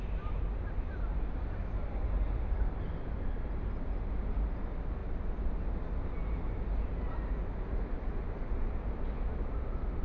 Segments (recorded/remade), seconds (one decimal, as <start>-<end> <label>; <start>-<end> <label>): 0.0-10.0 recorded